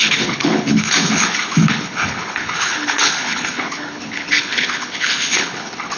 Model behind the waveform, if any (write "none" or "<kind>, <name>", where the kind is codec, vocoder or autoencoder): codec, HILCodec